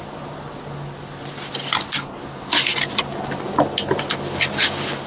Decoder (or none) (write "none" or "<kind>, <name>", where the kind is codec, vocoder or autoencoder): none